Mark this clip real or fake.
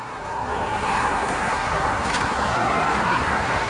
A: fake